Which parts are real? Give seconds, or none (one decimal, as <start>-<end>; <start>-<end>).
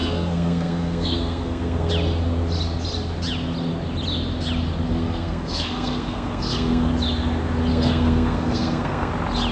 1.9-4.9; 6.9-7.7; 9.1-9.5